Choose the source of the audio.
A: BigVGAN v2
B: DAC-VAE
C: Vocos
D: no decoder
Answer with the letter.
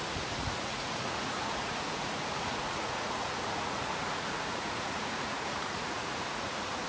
C